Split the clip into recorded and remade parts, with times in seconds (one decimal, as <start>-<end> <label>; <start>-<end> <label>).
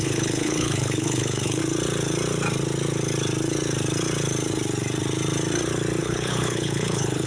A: 0.0-1.6 remade; 1.6-6.0 recorded; 6.0-7.3 remade